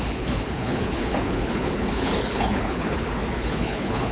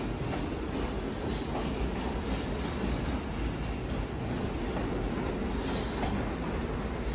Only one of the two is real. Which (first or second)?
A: second